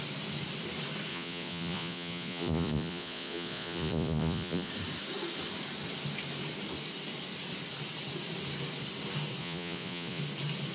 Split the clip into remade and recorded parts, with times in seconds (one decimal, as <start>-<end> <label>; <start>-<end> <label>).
0.0-1.1 recorded; 1.1-4.7 remade; 4.7-9.4 recorded; 9.4-10.2 remade; 10.2-10.7 recorded